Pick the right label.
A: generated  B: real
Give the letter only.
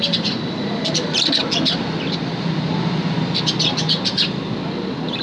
B